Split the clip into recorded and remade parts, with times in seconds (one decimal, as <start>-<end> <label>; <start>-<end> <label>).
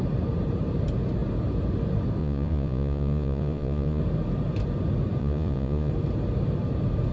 0.0-2.2 recorded; 2.2-4.0 remade; 4.0-5.2 recorded; 5.2-5.9 remade; 5.9-7.1 recorded